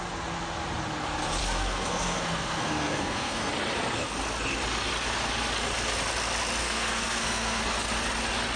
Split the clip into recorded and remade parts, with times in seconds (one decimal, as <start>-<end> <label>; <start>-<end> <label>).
0.0-1.4 recorded; 1.4-3.5 remade; 3.5-6.6 recorded; 6.6-7.6 remade; 7.6-8.6 recorded